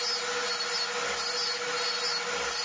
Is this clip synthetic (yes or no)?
no